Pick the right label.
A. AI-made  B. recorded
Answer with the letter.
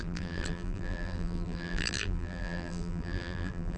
A